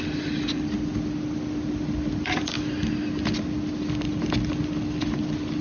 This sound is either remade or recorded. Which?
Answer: recorded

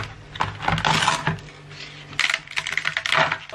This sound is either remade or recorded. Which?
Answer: recorded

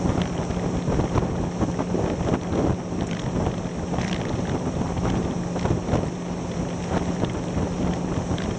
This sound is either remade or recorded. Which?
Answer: recorded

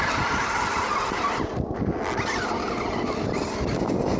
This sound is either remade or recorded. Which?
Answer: recorded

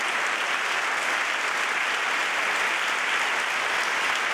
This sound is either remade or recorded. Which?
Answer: recorded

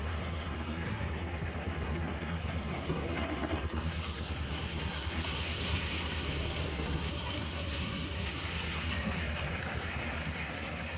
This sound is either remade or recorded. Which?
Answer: remade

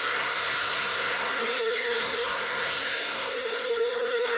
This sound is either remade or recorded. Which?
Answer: remade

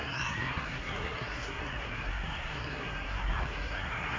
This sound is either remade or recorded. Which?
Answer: remade